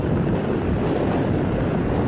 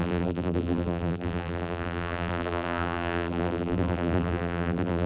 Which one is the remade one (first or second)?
second